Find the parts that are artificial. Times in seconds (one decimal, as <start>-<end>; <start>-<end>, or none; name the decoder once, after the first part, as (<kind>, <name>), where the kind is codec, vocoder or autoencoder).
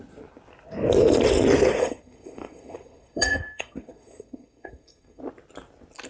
1.8-5.2 (codec, SNAC)